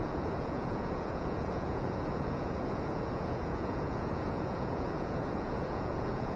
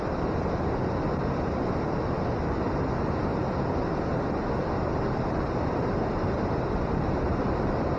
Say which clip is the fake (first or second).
first